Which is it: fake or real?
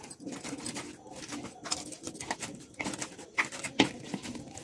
real